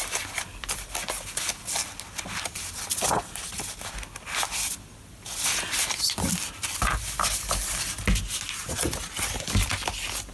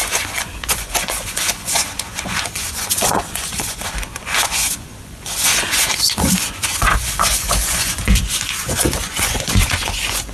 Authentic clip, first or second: first